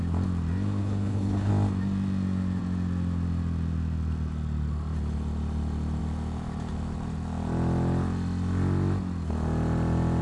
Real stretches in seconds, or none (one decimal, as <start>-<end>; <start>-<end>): 0.0-0.8; 1.5-10.2